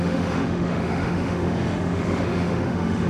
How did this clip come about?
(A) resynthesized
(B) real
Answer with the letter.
A